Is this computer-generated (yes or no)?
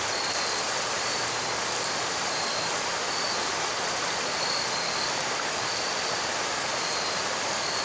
no